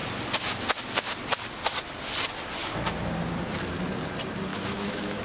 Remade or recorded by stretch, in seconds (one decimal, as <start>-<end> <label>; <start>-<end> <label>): 0.0-4.5 recorded; 4.5-5.2 remade